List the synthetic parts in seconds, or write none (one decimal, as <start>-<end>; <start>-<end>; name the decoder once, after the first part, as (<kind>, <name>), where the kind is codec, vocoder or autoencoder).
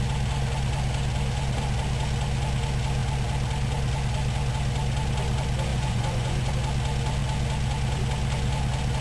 5.7-6.5 (vocoder, Vocos)